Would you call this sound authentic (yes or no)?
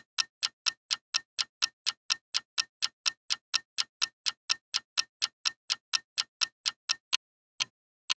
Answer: yes